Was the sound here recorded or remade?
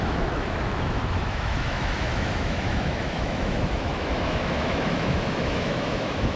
remade